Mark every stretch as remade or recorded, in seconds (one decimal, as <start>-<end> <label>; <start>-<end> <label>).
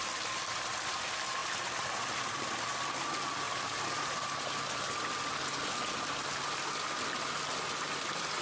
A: 0.0-8.4 recorded